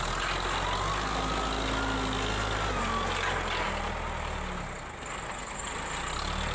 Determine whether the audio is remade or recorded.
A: recorded